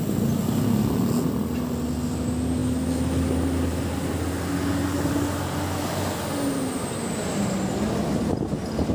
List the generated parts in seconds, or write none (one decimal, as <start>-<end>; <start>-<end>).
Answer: none